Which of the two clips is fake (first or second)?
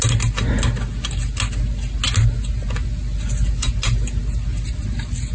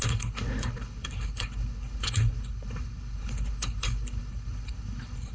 second